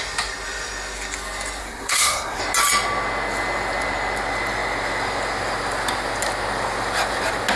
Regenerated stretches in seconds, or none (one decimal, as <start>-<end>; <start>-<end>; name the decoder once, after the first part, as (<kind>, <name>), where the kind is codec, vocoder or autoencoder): 1.6-2.4 (codec, SNAC)